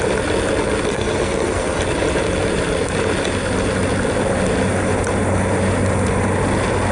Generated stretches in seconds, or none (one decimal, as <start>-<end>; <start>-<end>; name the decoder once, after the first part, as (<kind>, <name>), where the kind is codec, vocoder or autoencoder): 0.9-1.8 (codec, SNAC)